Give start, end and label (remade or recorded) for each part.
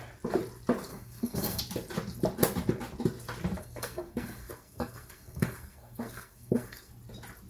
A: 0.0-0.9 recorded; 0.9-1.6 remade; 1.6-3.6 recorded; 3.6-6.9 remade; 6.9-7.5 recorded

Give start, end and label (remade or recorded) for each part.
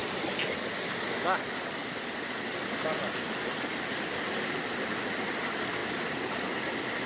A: 0.0-7.1 recorded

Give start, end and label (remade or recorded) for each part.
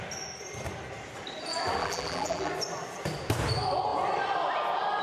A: 0.0-1.8 recorded; 1.8-2.5 remade; 2.5-5.0 recorded